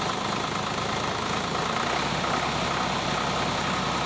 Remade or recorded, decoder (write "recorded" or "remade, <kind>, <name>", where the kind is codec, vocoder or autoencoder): recorded